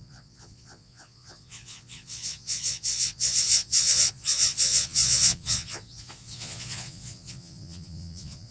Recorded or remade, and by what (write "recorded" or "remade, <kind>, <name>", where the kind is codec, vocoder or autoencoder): remade, vocoder, Vocos